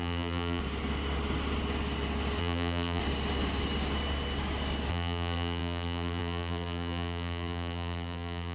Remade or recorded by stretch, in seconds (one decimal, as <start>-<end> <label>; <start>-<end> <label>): 0.0-0.6 remade; 0.6-2.4 recorded; 2.4-3.0 remade; 3.0-4.9 recorded; 4.9-8.5 remade